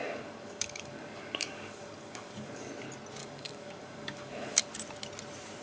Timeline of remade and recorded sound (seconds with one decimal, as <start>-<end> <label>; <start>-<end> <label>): 0.0-2.7 remade; 2.7-3.2 recorded; 3.2-4.6 remade; 4.6-5.6 recorded